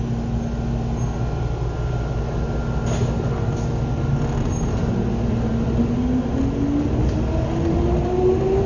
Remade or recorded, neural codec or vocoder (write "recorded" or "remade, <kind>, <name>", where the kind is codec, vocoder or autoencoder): recorded